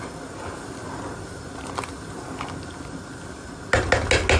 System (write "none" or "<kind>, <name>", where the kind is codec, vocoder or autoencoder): none